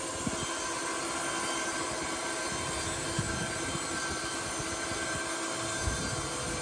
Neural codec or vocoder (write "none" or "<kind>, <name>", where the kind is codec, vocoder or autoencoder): none